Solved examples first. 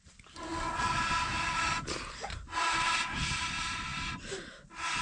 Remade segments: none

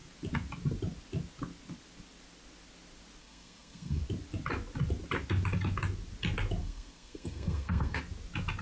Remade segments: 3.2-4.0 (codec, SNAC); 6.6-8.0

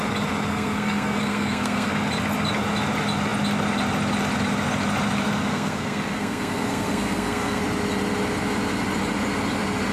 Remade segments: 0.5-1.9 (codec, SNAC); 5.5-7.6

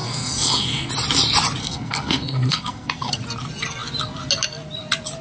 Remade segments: 0.0-0.9 (codec, SNAC); 1.6-3.2